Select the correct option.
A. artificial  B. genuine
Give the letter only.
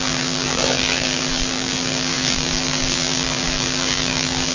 A